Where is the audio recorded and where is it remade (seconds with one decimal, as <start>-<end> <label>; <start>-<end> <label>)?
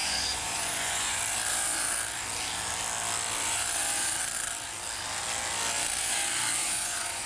0.0-1.2 remade; 1.2-6.6 recorded; 6.6-7.3 remade